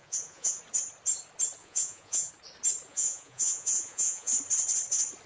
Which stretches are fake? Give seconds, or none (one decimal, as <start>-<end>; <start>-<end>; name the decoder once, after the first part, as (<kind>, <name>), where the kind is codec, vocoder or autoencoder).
0.0-0.6 (vocoder, Vocos); 1.6-2.3; 2.9-4.3

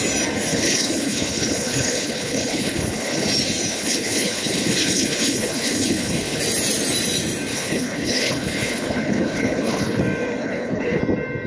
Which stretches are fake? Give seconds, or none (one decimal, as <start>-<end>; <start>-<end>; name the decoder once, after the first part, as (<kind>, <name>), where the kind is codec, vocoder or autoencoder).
0.5-3.3 (codec, HILCodec); 3.7-6.4; 7.5-10.0; 10.4-11.0